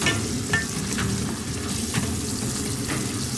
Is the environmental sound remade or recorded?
recorded